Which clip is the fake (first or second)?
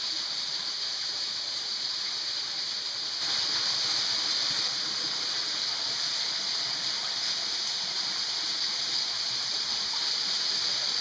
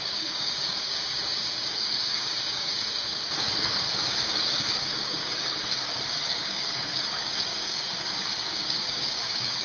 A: second